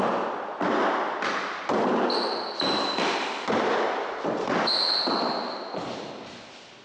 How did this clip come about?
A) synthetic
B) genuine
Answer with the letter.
B